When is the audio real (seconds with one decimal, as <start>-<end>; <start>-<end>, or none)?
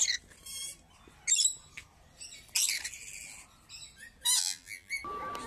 0.0-4.4; 4.9-5.5